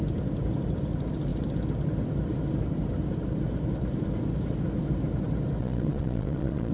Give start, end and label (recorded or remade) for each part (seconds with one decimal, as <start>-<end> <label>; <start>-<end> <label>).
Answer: 0.0-5.6 recorded; 5.6-6.7 remade